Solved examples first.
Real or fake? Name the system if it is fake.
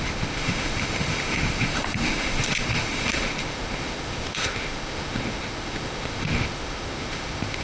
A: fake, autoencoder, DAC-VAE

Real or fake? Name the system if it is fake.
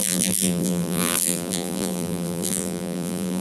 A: fake, vocoder, BigVGAN v2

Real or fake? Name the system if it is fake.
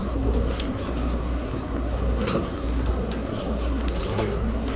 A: fake, codec, SNAC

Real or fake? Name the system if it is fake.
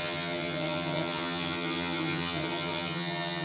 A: fake, vocoder, HiFi-GAN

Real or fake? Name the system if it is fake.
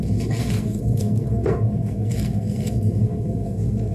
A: fake, codec, SNAC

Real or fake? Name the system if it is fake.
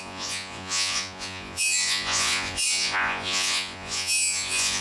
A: fake, vocoder, Vocos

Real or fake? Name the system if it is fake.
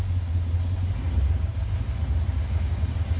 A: real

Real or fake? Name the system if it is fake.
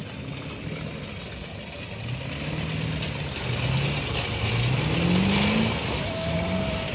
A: real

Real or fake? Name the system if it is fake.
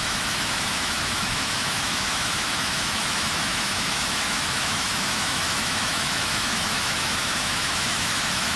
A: fake, autoencoder, DAC-VAE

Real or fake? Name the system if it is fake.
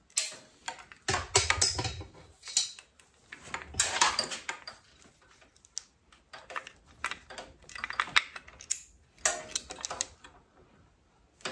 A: real